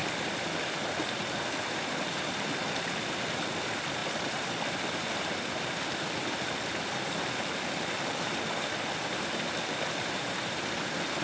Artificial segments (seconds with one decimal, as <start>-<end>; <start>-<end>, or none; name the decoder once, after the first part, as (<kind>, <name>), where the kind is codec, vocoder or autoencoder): none